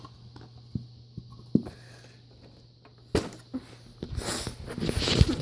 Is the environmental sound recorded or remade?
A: recorded